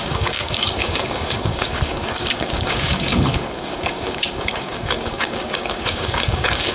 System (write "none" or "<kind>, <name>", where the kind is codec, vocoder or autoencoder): codec, DAC